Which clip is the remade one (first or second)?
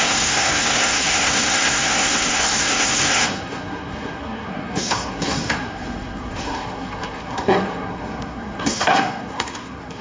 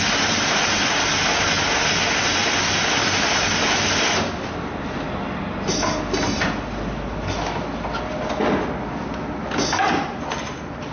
first